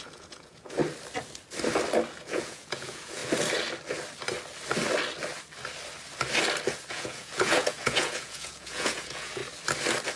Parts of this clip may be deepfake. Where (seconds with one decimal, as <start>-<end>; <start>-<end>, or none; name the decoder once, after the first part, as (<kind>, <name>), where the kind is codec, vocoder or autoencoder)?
0.0-0.8 (vocoder, Vocos); 2.1-3.2; 6.9-9.4